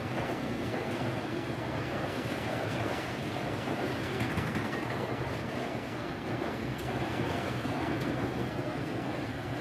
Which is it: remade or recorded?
remade